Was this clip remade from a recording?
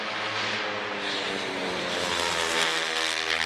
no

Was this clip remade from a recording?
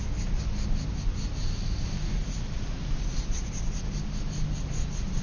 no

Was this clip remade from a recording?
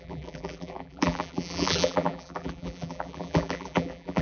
yes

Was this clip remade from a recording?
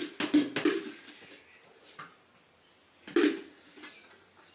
no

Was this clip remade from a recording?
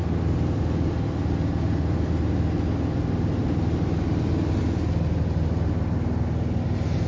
no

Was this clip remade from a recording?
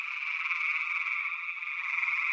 yes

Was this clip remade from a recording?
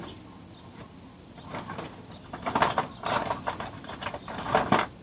yes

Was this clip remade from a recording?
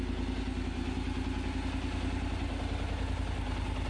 no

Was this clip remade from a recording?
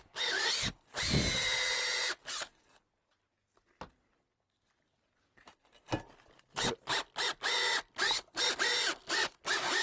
no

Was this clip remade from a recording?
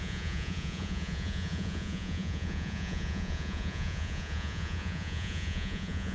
yes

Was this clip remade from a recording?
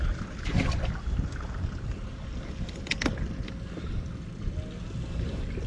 no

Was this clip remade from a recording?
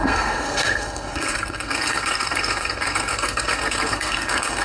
yes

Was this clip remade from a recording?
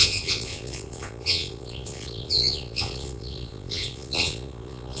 yes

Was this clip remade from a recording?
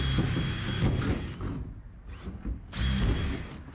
no